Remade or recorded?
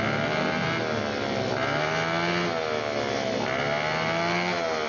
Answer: recorded